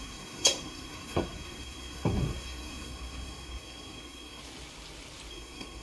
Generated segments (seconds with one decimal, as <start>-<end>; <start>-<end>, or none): 0.0-4.4; 5.3-5.8